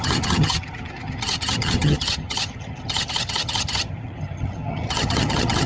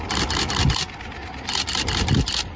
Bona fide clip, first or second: second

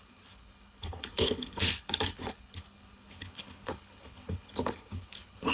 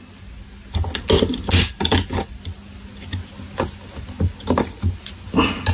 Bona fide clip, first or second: second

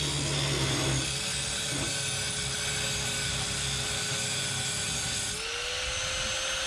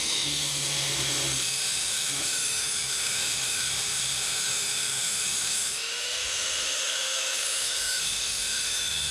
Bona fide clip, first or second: first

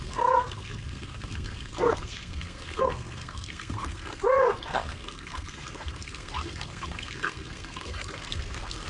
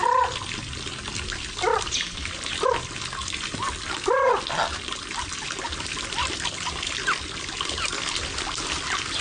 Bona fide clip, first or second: second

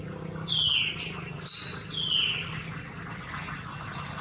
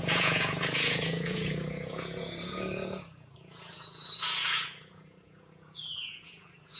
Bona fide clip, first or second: first